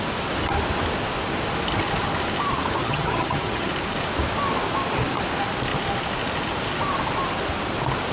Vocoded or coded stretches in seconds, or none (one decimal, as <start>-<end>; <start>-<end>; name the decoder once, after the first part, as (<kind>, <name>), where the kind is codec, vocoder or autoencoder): 2.8-3.7 (vocoder, HiFi-GAN)